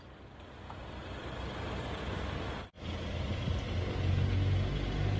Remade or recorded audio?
recorded